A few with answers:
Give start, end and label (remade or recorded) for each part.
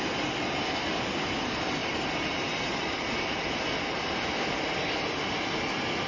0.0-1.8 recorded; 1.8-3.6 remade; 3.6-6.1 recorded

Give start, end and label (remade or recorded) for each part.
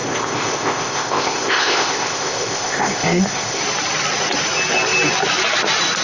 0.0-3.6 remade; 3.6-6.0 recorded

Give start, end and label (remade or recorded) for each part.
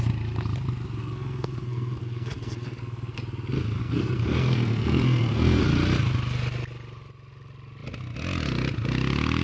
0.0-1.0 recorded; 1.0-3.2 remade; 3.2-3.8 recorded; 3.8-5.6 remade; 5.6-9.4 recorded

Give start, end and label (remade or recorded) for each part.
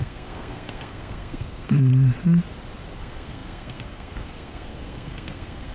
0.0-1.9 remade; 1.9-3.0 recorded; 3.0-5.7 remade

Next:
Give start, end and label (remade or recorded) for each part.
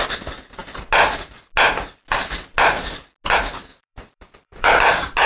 0.0-3.7 recorded; 3.7-4.8 remade; 4.8-5.3 recorded